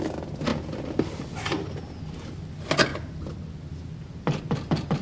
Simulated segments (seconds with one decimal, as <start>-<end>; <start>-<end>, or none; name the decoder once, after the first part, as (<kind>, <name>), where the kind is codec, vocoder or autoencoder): none